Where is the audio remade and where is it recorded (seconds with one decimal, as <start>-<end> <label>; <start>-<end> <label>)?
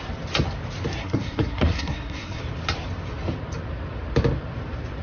0.0-1.0 recorded; 1.0-2.4 remade; 2.4-5.0 recorded